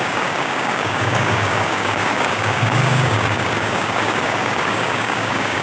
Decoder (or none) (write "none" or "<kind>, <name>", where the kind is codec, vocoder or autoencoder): codec, DAC